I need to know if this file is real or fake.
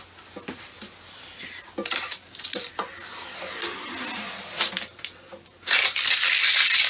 real